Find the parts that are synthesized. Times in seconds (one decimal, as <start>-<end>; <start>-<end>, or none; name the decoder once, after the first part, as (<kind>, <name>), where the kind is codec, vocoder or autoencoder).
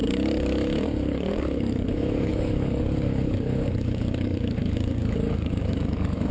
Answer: 0.0-6.3 (codec, DAC)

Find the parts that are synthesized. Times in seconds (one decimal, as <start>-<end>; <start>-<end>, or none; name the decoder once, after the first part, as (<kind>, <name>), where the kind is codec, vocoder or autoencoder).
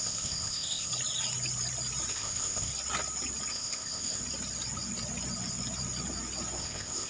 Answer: 0.0-0.9 (codec, ZipCodec); 2.1-2.7; 3.5-4.2; 6.6-7.1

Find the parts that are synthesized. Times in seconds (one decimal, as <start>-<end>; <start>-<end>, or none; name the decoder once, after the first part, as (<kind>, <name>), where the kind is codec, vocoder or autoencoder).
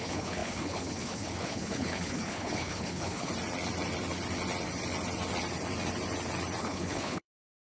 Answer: 0.0-3.3 (codec, HILCodec); 6.6-7.7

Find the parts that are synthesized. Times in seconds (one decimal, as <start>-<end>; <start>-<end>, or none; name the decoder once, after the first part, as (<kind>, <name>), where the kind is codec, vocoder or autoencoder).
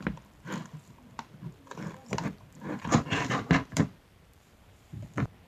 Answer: 2.0-5.5 (vocoder, BigVGAN v2)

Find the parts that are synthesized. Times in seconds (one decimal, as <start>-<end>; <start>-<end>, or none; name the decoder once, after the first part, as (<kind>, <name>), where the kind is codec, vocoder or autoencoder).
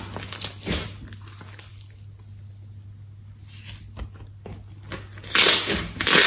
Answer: none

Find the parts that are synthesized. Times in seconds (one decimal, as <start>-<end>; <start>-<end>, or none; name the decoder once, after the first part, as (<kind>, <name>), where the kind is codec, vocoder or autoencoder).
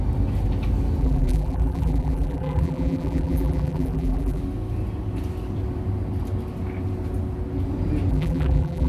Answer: 1.0-4.4 (vocoder, BigVGAN v2); 8.1-8.9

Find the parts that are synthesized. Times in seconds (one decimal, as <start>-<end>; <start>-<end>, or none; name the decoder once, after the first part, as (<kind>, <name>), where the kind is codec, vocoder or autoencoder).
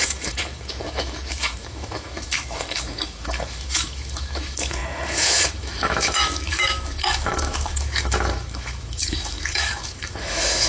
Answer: 0.0-10.7 (autoencoder, DAC-VAE)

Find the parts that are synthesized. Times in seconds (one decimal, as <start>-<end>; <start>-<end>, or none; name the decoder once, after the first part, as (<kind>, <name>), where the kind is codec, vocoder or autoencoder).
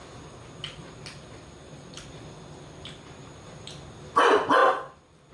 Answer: none